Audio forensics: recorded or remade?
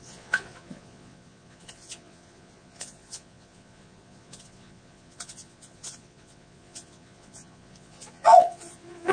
remade